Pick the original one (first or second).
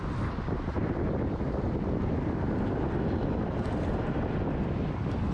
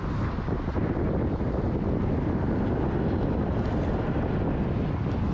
second